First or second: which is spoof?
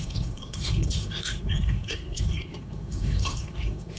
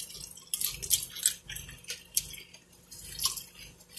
first